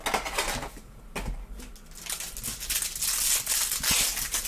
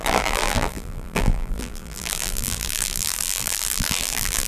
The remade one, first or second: second